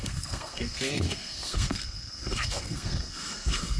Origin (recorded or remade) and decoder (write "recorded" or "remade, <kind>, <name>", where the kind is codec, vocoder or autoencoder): remade, codec, SNAC